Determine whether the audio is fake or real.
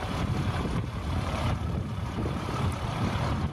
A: fake